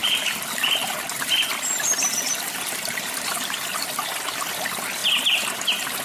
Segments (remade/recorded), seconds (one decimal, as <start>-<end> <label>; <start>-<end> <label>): 0.0-0.9 remade; 0.9-1.5 recorded; 1.5-3.6 remade; 3.6-6.0 recorded